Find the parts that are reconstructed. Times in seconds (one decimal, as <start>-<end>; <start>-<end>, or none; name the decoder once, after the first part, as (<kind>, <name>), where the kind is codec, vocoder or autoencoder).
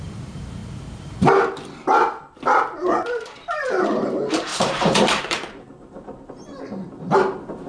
0.0-0.6 (vocoder, BigVGAN v2); 2.6-7.7